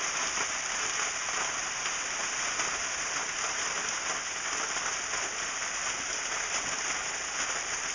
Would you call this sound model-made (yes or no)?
no